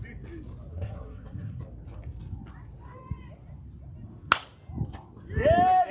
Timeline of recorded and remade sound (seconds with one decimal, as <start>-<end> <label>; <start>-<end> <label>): 0.0-0.7 recorded; 0.7-1.6 remade; 1.6-5.9 recorded